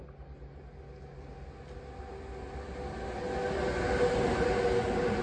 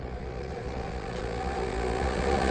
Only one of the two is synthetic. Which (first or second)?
second